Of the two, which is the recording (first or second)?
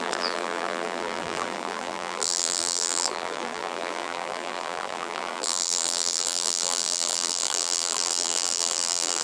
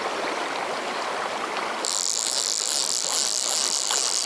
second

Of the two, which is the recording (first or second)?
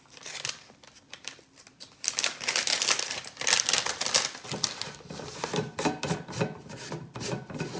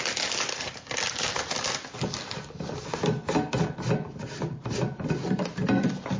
second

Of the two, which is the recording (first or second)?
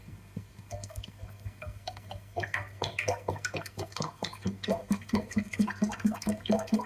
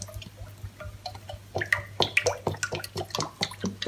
second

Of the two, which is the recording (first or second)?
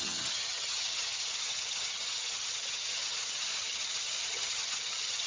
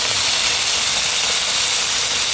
second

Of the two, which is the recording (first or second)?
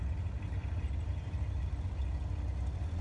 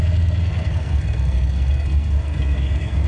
first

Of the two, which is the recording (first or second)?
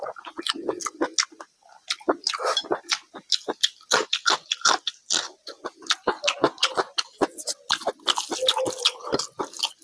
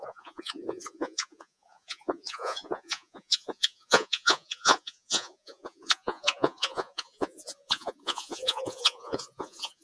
first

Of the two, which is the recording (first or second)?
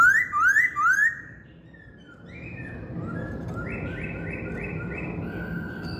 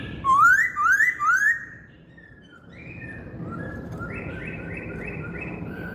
first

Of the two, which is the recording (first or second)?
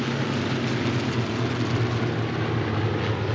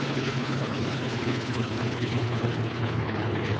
first